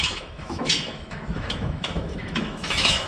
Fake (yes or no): yes